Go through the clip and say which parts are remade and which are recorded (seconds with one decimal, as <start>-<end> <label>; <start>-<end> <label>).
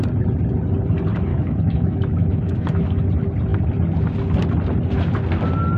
0.0-1.3 recorded; 1.3-3.1 remade; 3.1-5.8 recorded